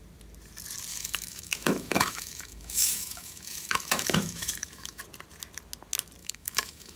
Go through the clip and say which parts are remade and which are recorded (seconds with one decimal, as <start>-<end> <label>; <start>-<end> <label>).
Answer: 0.0-0.9 recorded; 0.9-5.0 remade; 5.0-6.2 recorded; 6.2-7.0 remade